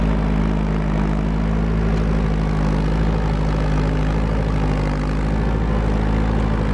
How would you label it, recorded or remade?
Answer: recorded